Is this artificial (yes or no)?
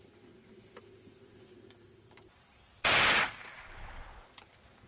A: no